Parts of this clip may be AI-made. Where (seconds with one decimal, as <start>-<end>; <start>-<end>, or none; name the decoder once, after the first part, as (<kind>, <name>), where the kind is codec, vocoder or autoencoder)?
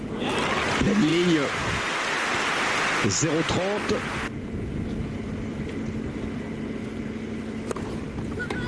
none